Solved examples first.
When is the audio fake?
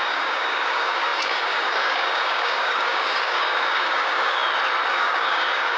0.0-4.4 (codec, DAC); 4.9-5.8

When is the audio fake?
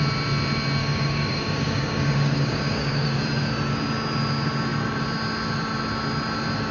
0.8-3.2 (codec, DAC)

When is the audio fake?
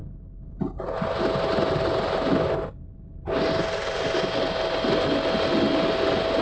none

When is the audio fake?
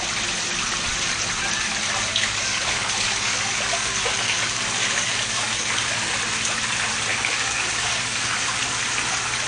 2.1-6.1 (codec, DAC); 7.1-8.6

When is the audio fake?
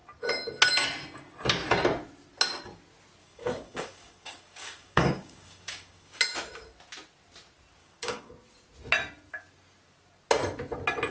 3.2-6.2 (codec, DAC); 7.8-8.3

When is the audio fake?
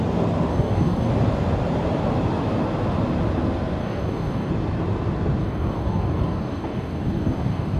0.5-1.1 (codec, DAC); 3.8-4.5; 5.4-7.8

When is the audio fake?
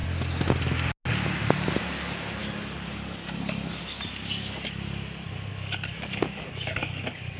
2.4-3.8 (codec, DAC); 5.5-7.4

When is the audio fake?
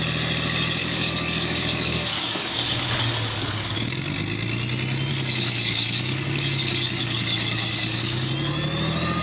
0.8-4.1 (codec, DAC); 5.1-8.3